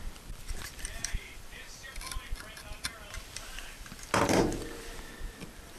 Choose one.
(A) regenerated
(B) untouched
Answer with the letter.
A